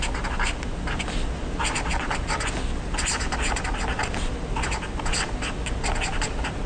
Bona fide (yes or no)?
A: yes